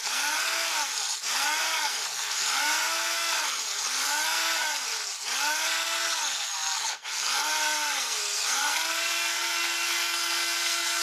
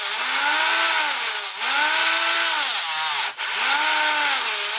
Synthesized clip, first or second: first